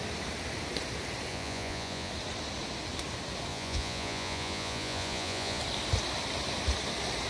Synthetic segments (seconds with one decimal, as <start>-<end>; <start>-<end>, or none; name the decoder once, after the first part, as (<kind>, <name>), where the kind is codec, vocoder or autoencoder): 1.3-2.1 (vocoder, Vocos); 3.5-5.6